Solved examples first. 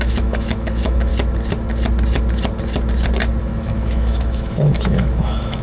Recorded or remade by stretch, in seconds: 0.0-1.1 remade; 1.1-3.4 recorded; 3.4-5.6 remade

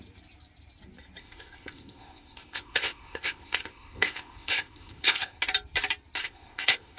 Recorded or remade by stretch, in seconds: 0.0-1.2 recorded; 1.2-5.4 remade; 5.4-6.2 recorded; 6.2-7.0 remade

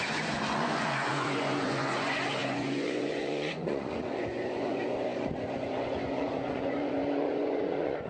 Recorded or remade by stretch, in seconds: 0.0-8.1 remade

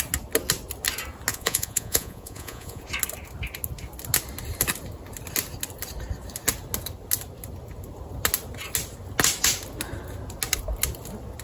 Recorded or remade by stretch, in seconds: 0.0-1.3 recorded; 1.3-2.8 remade; 2.8-11.4 recorded

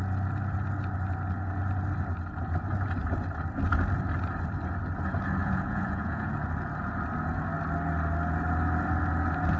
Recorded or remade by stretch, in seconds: 0.0-5.4 recorded; 5.4-6.3 remade; 6.3-9.6 recorded

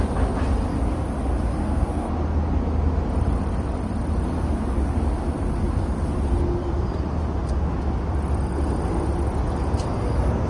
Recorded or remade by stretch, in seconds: 0.0-1.6 recorded; 1.6-2.1 remade; 2.1-10.5 recorded